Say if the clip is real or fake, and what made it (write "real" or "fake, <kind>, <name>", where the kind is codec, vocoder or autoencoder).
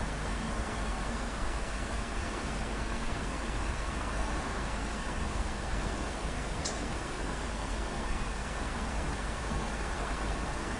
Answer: fake, codec, SNAC